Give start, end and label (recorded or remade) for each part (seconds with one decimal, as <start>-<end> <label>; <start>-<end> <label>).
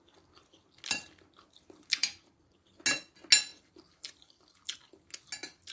0.0-2.0 recorded; 2.0-2.8 remade; 2.8-3.5 recorded; 3.5-4.9 remade; 4.9-5.7 recorded